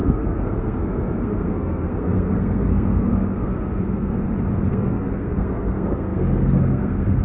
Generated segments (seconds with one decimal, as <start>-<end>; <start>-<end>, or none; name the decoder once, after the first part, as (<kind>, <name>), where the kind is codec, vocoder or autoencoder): 0.0-4.1 (codec, SNAC); 4.7-7.2